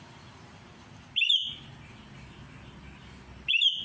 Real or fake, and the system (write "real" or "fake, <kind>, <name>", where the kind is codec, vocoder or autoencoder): real